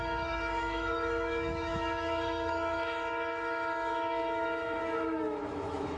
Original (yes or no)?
no